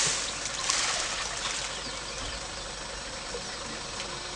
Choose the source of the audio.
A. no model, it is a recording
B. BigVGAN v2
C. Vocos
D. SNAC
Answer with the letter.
A